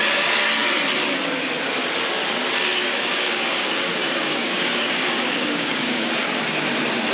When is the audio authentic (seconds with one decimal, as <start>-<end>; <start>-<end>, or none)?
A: 0.0-2.7; 6.1-7.1